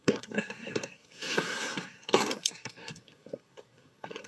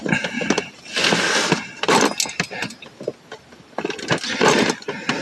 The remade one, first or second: first